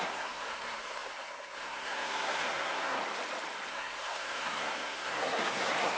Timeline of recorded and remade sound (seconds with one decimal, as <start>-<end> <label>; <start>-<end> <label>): 0.0-3.0 remade; 3.0-3.7 recorded; 3.7-6.0 remade